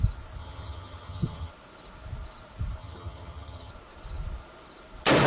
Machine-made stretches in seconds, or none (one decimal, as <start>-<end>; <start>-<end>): 0.4-1.5; 2.8-3.7